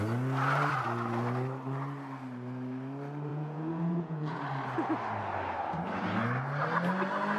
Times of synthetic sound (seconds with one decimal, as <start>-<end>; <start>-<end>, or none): 3.3-4.4